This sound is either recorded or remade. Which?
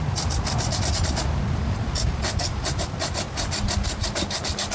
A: recorded